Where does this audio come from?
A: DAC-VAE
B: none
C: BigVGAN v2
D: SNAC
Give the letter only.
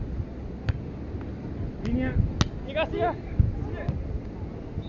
B